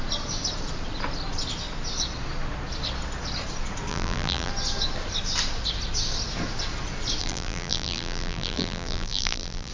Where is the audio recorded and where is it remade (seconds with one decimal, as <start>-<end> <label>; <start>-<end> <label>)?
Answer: 0.0-3.9 recorded; 3.9-4.5 remade; 4.5-7.2 recorded; 7.2-9.7 remade